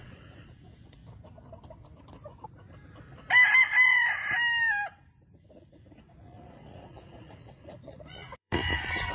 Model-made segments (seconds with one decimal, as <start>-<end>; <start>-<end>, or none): 0.0-1.0; 5.3-9.1